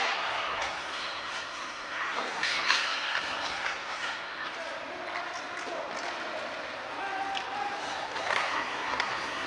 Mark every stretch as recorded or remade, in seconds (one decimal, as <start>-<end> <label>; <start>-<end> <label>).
0.0-4.5 remade; 4.5-7.8 recorded; 7.8-9.5 remade